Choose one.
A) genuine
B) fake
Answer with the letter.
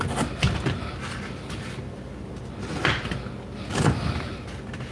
A